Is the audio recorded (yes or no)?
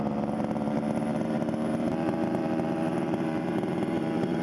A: no